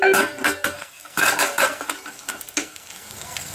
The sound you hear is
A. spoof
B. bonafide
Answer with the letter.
A